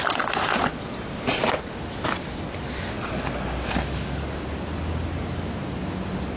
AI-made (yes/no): no